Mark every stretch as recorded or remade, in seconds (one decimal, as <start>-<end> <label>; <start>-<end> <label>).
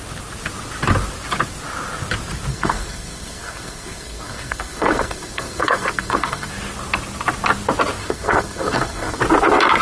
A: 0.0-2.5 recorded; 2.5-6.5 remade; 6.5-8.0 recorded; 8.0-9.2 remade; 9.2-9.8 recorded